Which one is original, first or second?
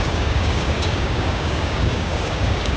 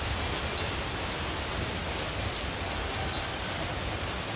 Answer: second